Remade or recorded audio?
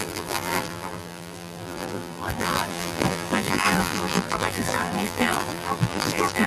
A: remade